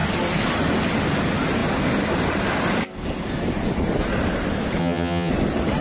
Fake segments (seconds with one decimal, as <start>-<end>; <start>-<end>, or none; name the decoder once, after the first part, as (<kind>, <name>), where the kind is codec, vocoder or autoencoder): 4.8-5.3 (vocoder, HiFi-GAN)